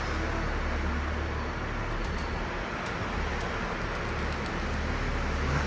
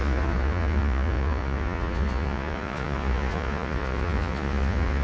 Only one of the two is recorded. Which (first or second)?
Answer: first